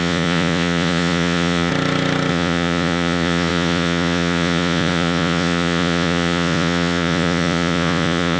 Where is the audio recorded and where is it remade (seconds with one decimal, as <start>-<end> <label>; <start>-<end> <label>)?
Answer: 0.0-1.7 remade; 1.7-2.3 recorded; 2.3-8.4 remade